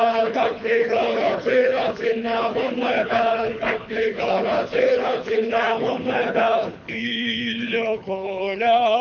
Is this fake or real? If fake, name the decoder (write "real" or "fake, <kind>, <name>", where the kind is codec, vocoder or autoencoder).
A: fake, codec, HILCodec